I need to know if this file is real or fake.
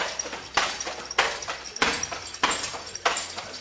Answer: real